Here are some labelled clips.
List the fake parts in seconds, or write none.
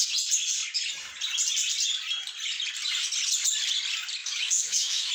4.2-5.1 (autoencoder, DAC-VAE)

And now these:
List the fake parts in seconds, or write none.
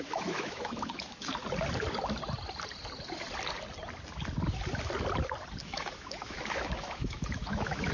0.0-1.3 (autoencoder, DAC-VAE); 5.6-7.9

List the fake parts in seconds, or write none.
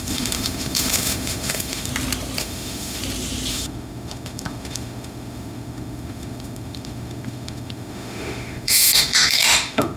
0.0-1.9 (autoencoder, DAC-VAE); 2.4-3.0; 3.5-10.0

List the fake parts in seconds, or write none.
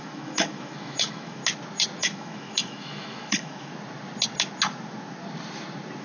0.0-1.4 (autoencoder, DAC-VAE); 2.0-3.7